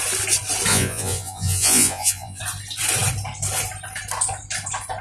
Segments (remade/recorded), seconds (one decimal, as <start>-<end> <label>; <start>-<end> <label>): 0.0-0.7 recorded; 0.7-2.4 remade; 2.4-5.0 recorded